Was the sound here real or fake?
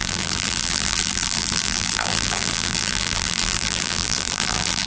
fake